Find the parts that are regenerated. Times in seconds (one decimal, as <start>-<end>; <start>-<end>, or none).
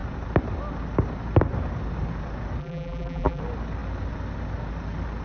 2.6-3.4